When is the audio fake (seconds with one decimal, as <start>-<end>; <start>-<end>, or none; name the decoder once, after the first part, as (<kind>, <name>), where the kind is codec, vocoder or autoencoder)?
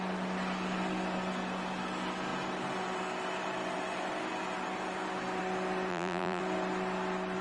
5.9-6.4 (vocoder, BigVGAN v2)